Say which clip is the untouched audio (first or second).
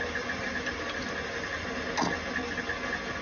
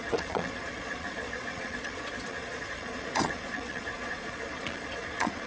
first